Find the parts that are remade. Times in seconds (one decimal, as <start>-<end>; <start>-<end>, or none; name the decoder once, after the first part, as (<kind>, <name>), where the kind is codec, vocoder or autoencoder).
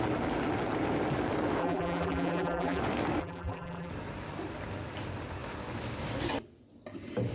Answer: 1.6-2.8 (vocoder, BigVGAN v2); 3.2-3.9